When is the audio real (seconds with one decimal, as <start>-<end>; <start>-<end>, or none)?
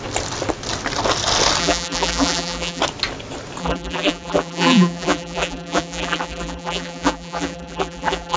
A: 0.0-1.6; 2.8-3.6